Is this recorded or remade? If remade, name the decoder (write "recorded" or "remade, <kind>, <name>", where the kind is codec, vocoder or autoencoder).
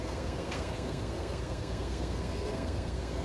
remade, codec, SNAC